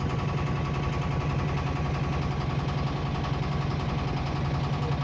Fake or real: real